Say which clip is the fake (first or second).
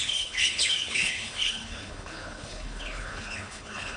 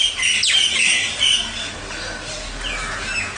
first